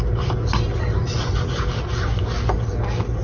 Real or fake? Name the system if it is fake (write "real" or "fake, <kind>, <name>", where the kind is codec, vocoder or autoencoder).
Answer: real